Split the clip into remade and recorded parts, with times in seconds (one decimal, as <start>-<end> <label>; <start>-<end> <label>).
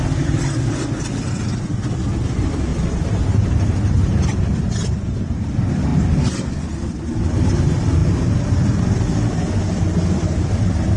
0.0-2.7 recorded; 2.7-5.4 remade; 5.4-11.0 recorded